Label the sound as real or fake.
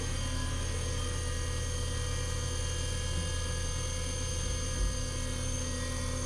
real